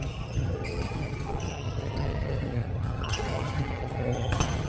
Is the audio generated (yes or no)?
yes